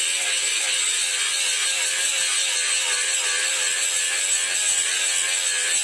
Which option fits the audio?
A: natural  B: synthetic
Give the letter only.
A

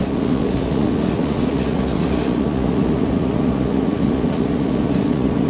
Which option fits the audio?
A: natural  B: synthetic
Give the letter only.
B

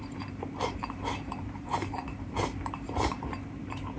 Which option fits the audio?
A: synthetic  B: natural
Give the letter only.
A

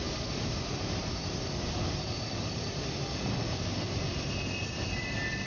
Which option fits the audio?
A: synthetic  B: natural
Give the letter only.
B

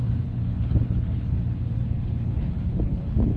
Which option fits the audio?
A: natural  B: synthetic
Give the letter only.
B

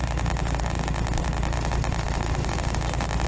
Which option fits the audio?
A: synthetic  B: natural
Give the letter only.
B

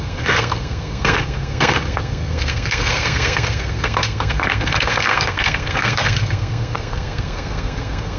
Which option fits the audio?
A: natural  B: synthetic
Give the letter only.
B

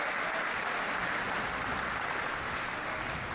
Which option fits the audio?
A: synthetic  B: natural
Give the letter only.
B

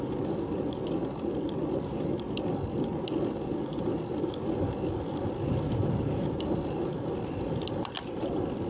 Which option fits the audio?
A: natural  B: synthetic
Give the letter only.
A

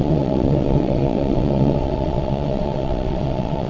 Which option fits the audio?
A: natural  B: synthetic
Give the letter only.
B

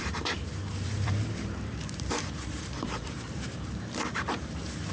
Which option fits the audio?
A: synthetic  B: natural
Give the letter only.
A